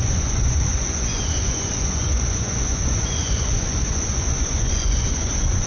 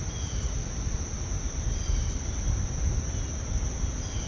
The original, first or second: second